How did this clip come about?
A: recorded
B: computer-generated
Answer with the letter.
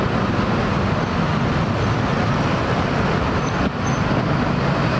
A